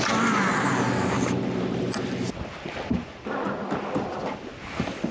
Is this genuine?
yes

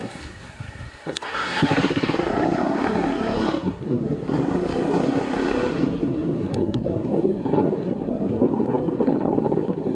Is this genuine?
no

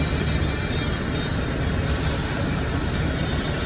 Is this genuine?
yes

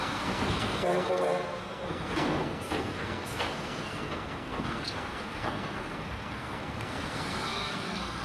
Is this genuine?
no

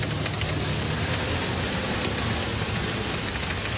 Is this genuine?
yes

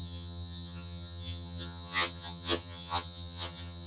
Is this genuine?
no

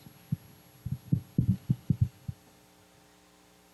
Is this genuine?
yes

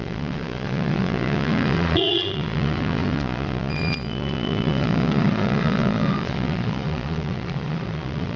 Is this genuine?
no